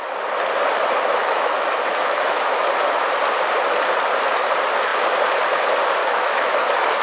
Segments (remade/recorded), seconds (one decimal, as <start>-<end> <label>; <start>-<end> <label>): 0.0-1.2 recorded; 1.2-2.6 remade; 2.6-6.0 recorded; 6.0-6.5 remade; 6.5-7.0 recorded